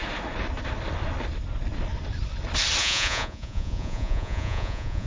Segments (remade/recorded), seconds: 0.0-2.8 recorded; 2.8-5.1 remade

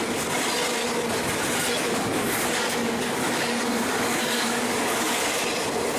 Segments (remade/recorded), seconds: 0.0-1.8 recorded; 1.8-5.4 remade; 5.4-6.0 recorded

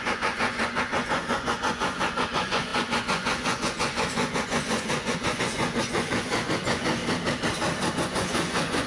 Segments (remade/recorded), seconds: 0.0-7.0 remade; 7.0-7.9 recorded; 7.9-8.9 remade

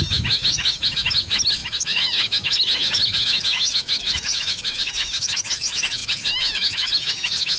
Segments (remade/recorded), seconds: 0.0-7.6 remade